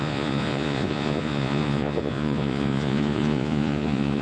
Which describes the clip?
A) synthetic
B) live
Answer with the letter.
A